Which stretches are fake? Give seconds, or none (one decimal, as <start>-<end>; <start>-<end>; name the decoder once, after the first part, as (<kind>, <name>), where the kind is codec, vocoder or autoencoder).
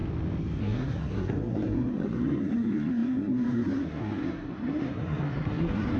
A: 0.6-6.0 (codec, SNAC)